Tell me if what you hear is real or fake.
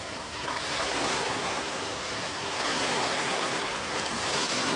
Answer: fake